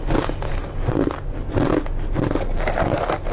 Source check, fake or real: real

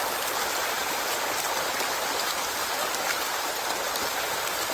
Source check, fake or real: real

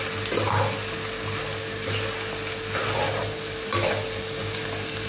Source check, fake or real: real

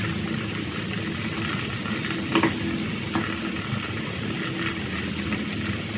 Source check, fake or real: real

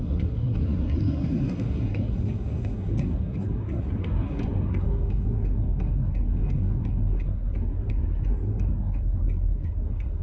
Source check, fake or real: fake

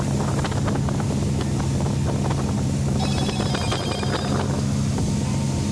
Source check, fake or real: real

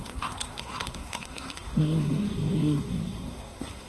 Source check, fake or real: fake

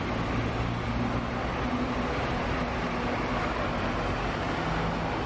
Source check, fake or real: real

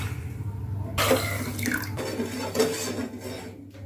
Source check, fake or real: real